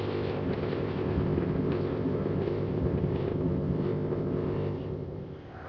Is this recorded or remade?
remade